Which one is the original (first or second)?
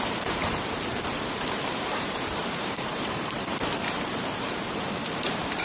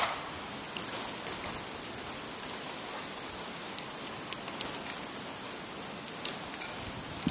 second